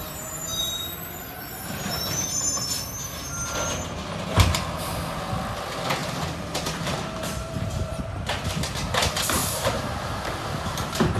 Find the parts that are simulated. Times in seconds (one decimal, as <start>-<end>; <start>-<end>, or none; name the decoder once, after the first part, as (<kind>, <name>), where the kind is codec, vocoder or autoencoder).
0.5-2.8 (vocoder, BigVGAN v2); 6.0-8.0; 9.4-11.2